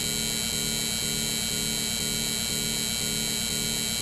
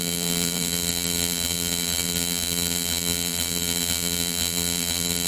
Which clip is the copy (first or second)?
second